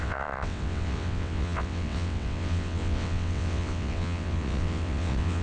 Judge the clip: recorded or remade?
remade